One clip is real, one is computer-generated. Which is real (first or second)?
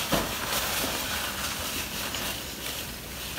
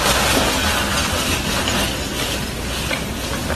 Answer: second